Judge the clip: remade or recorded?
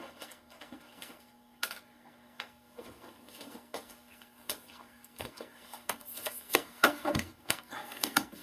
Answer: remade